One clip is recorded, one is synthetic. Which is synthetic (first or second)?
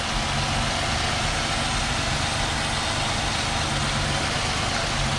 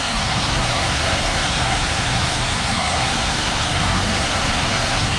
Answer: second